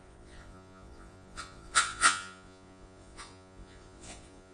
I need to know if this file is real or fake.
fake